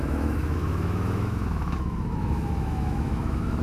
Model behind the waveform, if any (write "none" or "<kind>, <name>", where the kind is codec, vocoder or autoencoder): autoencoder, DAC-VAE